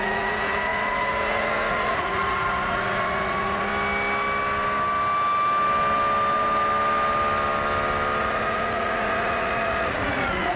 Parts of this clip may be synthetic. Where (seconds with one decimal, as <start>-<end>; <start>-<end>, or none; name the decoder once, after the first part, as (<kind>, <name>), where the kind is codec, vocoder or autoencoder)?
0.0-3.7 (vocoder, Vocos); 8.2-10.6